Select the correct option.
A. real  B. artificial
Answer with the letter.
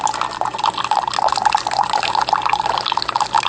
A